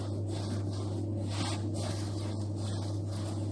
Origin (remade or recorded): recorded